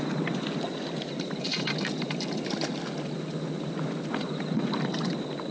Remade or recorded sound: recorded